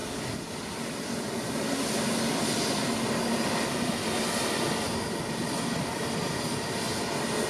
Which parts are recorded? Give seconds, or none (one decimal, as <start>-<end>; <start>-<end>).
0.0-7.5